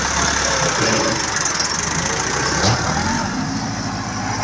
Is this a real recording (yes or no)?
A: no